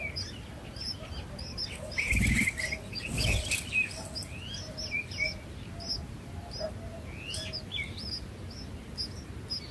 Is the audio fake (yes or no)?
no